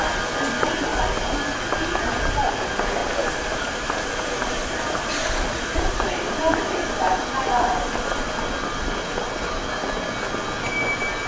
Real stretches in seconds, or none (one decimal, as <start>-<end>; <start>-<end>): 0.0-3.0; 7.4-11.3